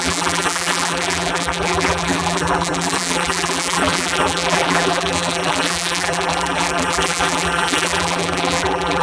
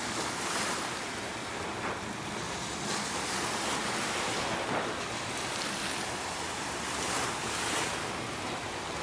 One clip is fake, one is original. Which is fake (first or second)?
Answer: first